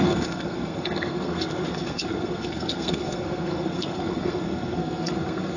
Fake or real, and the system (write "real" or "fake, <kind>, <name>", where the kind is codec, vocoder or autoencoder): fake, codec, SNAC